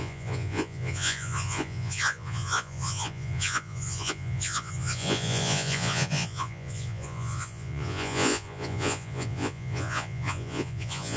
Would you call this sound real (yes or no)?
no